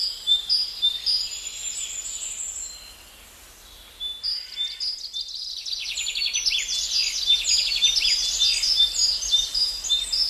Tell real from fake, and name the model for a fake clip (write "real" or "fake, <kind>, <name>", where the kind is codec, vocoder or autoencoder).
real